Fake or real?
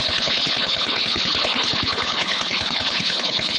fake